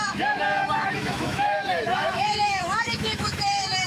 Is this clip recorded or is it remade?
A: remade